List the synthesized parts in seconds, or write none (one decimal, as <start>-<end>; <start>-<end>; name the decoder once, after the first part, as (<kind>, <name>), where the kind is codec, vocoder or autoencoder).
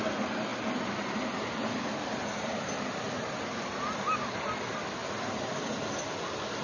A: none